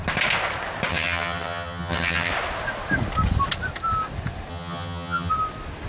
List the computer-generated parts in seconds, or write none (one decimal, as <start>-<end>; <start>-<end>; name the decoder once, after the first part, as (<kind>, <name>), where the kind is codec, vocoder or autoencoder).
0.9-2.3 (vocoder, HiFi-GAN); 4.5-5.3